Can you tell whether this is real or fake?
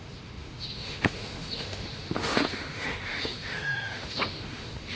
fake